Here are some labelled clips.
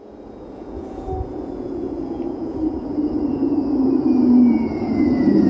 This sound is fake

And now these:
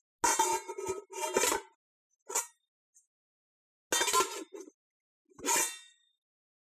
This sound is real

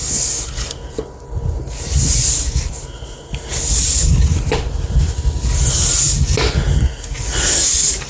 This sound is real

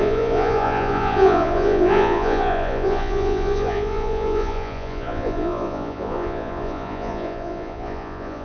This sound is fake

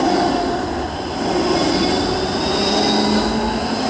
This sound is real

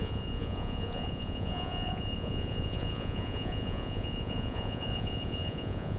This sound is fake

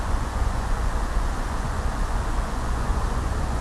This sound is fake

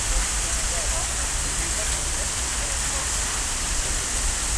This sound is real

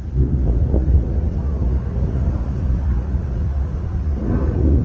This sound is fake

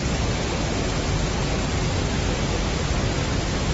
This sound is real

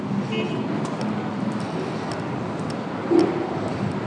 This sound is real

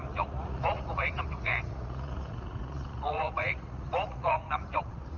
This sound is fake